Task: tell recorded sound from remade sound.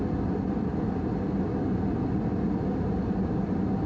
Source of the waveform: recorded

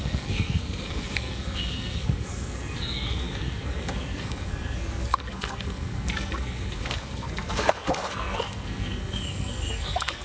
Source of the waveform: remade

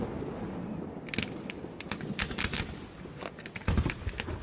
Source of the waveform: recorded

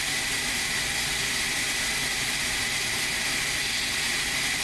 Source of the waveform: recorded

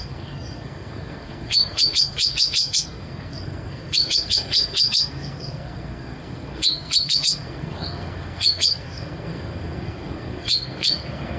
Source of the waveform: remade